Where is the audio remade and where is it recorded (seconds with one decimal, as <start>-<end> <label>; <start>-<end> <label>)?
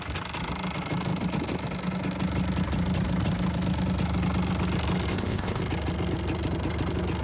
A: 0.0-5.1 recorded; 5.1-5.6 remade; 5.6-7.2 recorded